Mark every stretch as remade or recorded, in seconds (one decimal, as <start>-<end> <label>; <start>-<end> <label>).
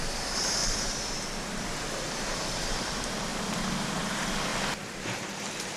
0.0-0.6 remade; 0.6-2.1 recorded; 2.1-4.5 remade; 4.5-5.1 recorded; 5.1-5.8 remade